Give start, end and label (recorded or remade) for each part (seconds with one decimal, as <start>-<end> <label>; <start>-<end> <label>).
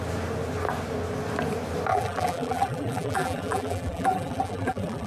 0.0-1.9 recorded; 1.9-5.1 remade